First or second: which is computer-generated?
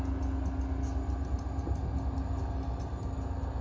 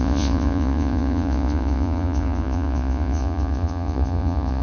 second